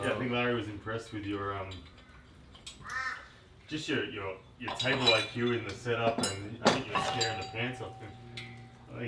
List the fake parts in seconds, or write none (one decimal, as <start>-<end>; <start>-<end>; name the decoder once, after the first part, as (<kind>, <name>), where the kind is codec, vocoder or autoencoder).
none

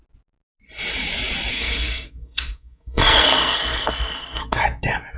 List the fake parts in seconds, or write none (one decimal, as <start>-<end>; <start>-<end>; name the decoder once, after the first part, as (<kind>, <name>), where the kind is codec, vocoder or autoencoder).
1.5-4.6 (codec, SNAC)